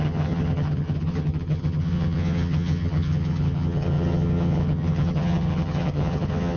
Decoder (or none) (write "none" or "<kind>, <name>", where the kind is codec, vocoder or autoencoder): vocoder, HiFi-GAN